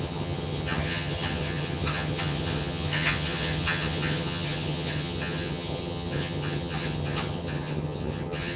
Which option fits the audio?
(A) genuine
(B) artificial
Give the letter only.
B